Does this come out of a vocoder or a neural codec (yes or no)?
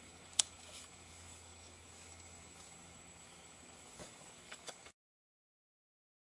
yes